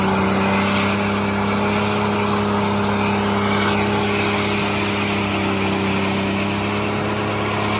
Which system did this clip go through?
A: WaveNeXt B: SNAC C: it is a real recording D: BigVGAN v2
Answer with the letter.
C